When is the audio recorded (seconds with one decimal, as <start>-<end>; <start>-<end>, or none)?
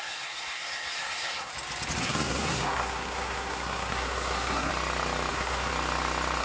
1.5-2.0; 4.7-5.3; 5.7-6.4